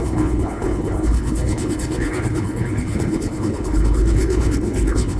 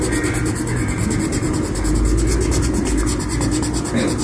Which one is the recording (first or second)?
second